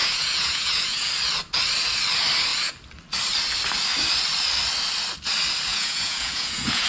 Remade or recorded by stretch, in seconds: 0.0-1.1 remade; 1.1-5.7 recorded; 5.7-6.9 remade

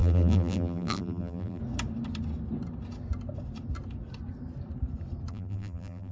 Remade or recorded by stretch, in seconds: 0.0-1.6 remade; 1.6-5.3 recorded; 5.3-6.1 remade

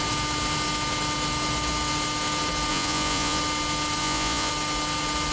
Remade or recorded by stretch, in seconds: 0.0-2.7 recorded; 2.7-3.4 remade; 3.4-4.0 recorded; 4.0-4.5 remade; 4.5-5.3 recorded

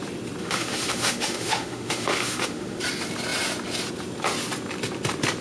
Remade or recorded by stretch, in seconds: 0.0-0.4 recorded; 0.4-2.8 remade; 2.8-5.4 recorded

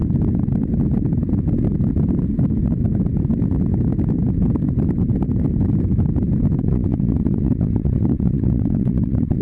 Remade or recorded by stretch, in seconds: 0.0-6.6 recorded; 6.6-9.4 remade

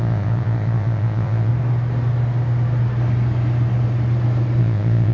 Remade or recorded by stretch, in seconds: 0.0-1.5 remade; 1.5-4.6 recorded; 4.6-5.1 remade

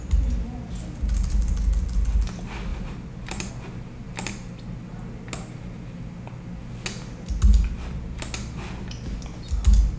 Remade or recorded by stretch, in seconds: 0.0-2.7 recorded; 2.7-3.5 remade; 3.5-10.0 recorded

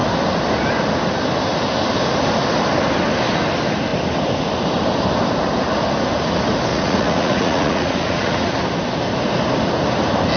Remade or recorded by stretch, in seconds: 0.0-6.7 recorded; 6.7-8.5 remade; 8.5-10.4 recorded